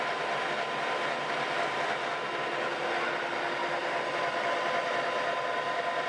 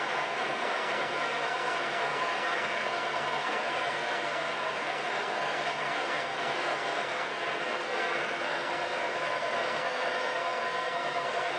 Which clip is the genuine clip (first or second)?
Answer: first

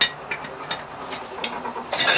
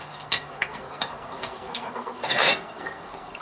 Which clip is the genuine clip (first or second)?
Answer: first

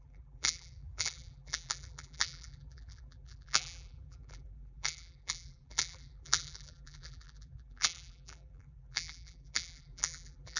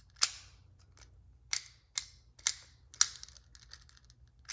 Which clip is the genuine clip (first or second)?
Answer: second